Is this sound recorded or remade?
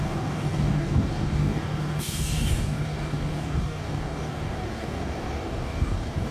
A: remade